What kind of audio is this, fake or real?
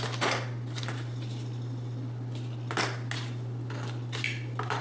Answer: real